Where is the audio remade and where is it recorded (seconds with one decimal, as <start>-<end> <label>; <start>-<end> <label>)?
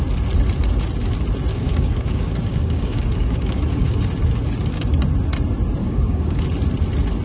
0.0-1.5 recorded; 1.5-4.0 remade; 4.0-5.8 recorded; 5.8-6.4 remade; 6.4-7.2 recorded